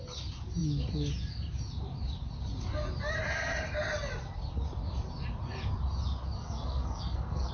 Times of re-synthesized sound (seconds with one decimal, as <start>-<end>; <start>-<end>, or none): 6.4-7.5

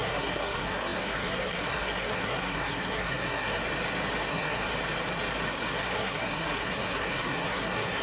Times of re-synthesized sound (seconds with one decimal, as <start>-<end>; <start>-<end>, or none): 0.0-3.6; 4.3-4.7; 5.5-8.0